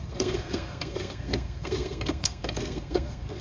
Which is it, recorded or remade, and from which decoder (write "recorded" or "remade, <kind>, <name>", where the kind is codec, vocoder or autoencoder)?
remade, codec, SNAC